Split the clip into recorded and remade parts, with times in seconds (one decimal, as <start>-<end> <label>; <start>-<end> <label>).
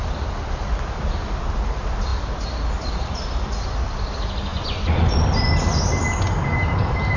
0.0-4.5 recorded; 4.5-5.1 remade; 5.1-7.2 recorded